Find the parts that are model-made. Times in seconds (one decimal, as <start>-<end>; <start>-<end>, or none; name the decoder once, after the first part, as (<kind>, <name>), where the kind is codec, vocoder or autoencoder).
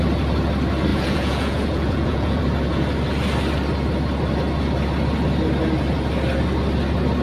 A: 0.9-2.4 (vocoder, Vocos)